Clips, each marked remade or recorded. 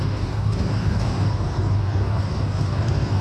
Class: remade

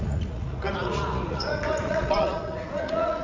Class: remade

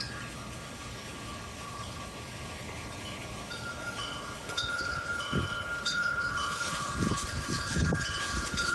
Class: remade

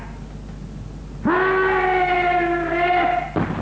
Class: recorded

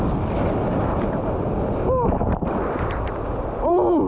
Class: recorded